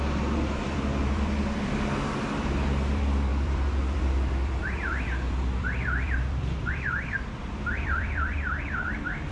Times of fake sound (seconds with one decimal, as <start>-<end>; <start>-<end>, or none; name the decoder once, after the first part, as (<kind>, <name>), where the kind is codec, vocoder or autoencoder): 0.0-9.3 (vocoder, BigVGAN v2)